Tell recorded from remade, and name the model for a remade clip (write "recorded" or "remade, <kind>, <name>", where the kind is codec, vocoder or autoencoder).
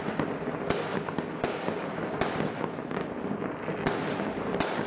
recorded